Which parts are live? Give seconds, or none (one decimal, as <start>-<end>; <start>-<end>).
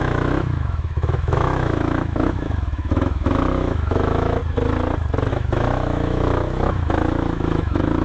4.4-5.3